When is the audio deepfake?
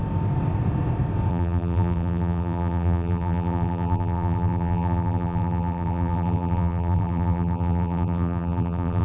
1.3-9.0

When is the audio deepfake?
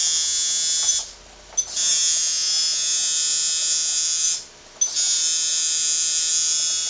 none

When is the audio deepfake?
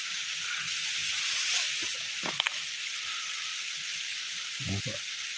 none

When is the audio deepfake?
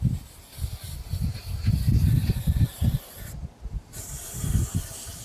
3.4-4.5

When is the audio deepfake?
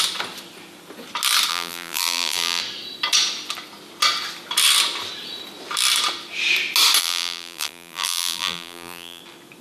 1.5-2.6; 7.0-9.2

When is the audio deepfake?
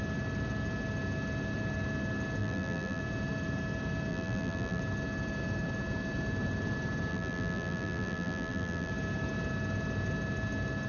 2.4-3.0; 4.1-4.8; 7.1-8.9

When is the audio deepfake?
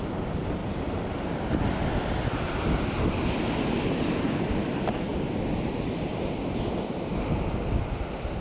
0.0-0.6; 3.4-5.1; 6.1-8.4